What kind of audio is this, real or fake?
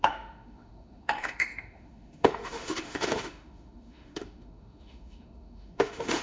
fake